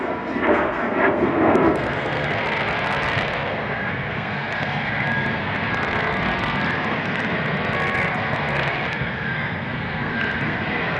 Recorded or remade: remade